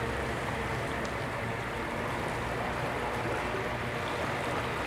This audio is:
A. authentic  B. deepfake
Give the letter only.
A